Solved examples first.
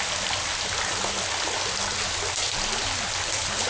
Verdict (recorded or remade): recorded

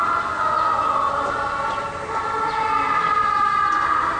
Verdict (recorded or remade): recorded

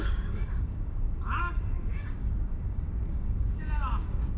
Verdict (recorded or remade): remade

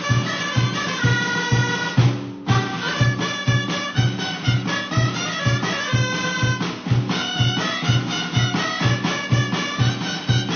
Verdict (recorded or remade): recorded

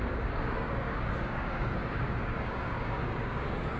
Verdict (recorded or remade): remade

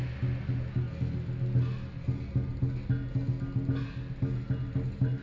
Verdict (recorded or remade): recorded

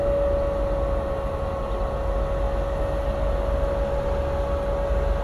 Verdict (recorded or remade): recorded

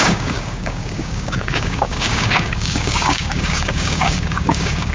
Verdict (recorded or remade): remade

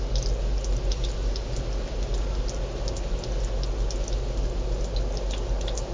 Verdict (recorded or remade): recorded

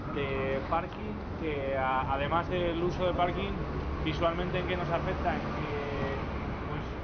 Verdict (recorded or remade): recorded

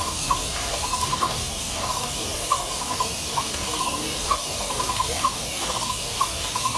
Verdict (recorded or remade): remade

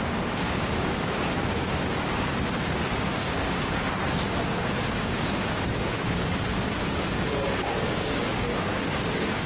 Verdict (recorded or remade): remade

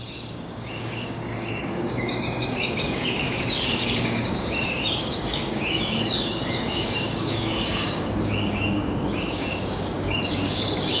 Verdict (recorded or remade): remade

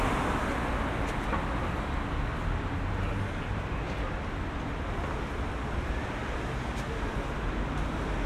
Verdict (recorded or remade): recorded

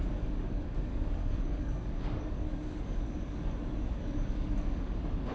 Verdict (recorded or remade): remade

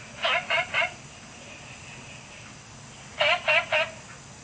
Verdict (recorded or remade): recorded